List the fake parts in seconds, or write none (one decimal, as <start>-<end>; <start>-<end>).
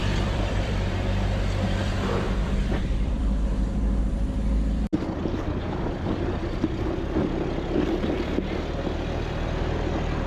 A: 0.0-3.2